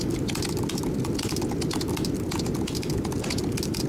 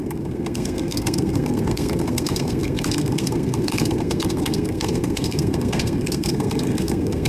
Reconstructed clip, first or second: second